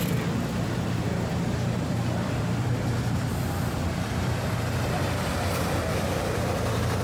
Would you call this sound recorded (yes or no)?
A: no